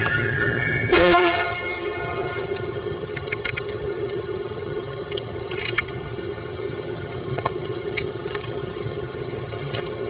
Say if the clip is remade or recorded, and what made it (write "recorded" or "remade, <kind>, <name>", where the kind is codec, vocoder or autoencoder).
remade, vocoder, HiFi-GAN